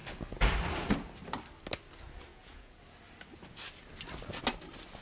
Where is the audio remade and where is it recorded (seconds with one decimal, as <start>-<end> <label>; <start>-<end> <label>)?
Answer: 0.0-2.3 recorded; 2.3-2.8 remade; 2.8-5.0 recorded